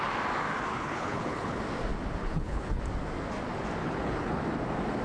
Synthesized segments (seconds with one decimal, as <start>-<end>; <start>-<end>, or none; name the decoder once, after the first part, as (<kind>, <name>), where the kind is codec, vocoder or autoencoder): 0.7-1.6 (codec, HILCodec); 2.2-2.8; 3.8-4.4